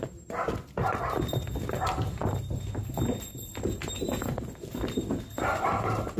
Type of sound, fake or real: real